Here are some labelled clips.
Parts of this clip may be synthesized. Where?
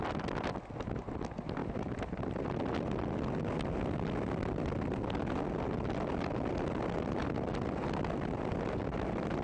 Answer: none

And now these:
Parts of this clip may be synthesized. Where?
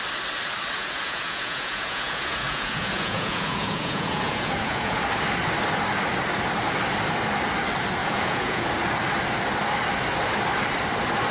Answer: 0.8-5.0; 8.0-8.7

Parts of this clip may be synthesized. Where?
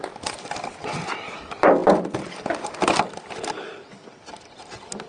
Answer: none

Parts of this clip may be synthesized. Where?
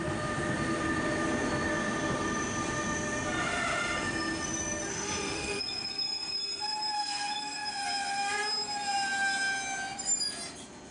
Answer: 4.9-5.6